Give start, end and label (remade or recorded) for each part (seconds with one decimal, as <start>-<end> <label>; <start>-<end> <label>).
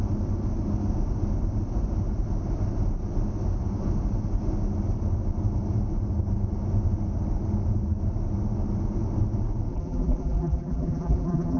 0.0-9.7 recorded; 9.7-11.6 remade